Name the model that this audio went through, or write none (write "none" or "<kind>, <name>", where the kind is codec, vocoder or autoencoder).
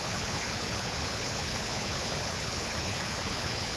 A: codec, HILCodec